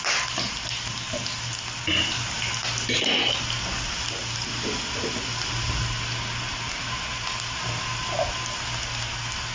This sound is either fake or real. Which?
real